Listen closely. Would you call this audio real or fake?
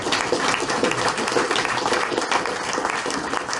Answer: real